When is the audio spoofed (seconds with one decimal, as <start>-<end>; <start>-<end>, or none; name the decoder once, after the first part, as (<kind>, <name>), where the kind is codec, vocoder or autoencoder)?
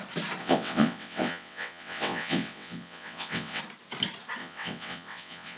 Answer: 0.4-3.6 (vocoder, WaveNeXt); 4.4-5.6